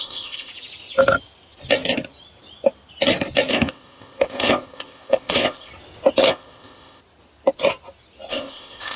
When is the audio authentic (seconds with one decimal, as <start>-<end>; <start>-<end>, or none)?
0.5-3.5; 5.7-6.3; 7.0-8.3